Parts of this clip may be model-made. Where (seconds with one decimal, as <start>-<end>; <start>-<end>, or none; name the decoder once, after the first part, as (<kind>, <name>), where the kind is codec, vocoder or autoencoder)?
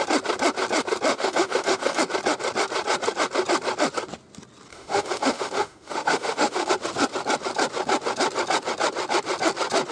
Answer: 1.1-2.0 (autoencoder, DAC-VAE); 4.7-6.7